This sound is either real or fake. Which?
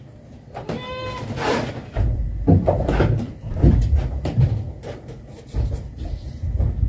real